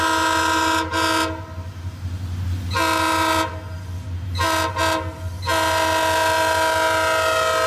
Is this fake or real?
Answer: real